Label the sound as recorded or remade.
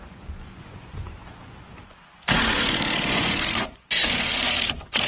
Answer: remade